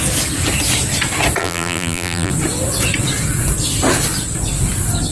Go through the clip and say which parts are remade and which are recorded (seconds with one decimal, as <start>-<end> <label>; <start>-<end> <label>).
0.0-1.4 recorded; 1.4-2.3 remade; 2.3-5.1 recorded